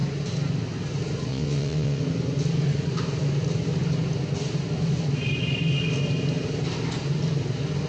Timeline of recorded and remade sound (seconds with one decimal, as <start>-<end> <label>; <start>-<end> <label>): 0.0-1.3 recorded; 1.3-2.0 remade; 2.0-7.9 recorded